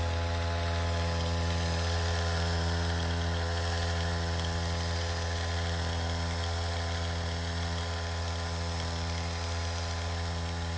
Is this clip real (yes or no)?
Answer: yes